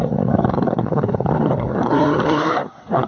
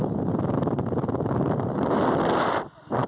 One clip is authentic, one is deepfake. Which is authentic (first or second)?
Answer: second